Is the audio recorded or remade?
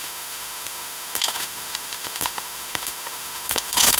remade